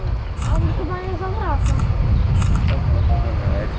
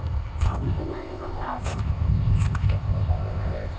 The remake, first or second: second